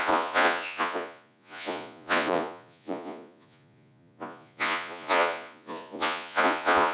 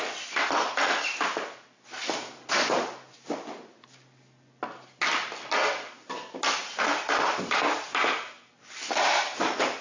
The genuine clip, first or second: second